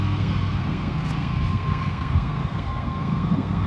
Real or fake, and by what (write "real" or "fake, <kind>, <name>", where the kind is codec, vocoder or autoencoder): fake, codec, SNAC